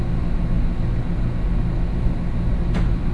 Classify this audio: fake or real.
real